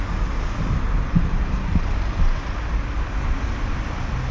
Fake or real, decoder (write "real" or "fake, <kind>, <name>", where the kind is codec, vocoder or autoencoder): real